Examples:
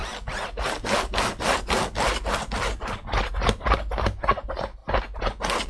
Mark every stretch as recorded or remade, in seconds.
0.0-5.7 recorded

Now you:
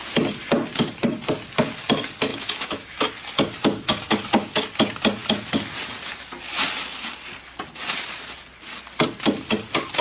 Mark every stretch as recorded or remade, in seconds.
0.0-2.3 recorded; 2.3-3.0 remade; 3.0-10.0 recorded